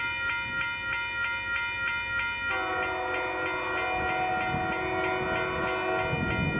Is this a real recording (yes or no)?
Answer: yes